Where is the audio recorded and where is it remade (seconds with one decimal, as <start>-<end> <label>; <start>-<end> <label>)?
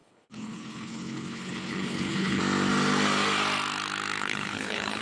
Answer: 0.0-2.4 remade; 2.4-4.2 recorded; 4.2-5.0 remade